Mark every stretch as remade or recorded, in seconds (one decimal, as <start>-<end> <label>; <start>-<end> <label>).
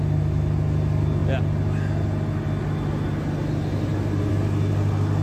0.0-5.2 recorded